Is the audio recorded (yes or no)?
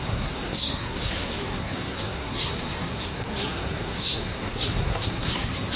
no